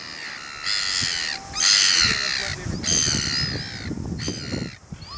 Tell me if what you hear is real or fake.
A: real